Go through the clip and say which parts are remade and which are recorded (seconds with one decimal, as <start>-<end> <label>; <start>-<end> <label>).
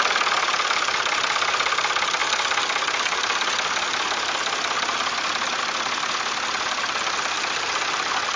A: 0.0-8.4 recorded